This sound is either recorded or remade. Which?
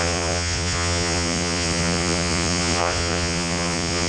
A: remade